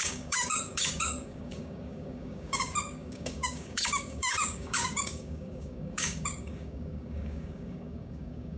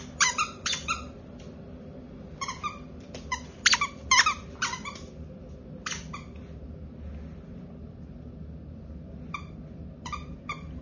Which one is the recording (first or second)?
second